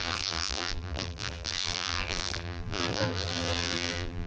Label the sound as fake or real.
fake